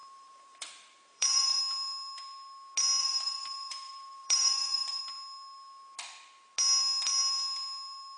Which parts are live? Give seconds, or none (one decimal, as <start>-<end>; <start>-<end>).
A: 1.6-3.0; 5.0-8.2